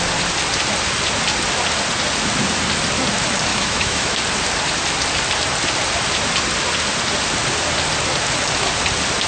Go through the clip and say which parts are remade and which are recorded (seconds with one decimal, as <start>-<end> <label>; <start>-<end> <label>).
0.0-3.5 recorded; 3.5-4.2 remade; 4.2-9.3 recorded